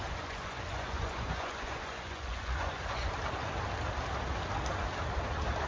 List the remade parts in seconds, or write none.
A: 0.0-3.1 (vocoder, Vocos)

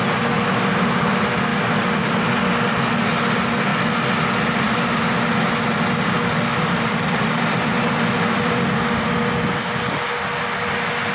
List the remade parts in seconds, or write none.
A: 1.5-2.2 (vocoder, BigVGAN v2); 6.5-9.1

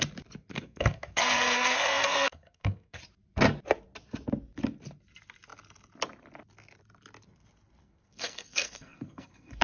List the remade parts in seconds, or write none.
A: 0.5-3.0 (codec, SNAC); 7.8-9.6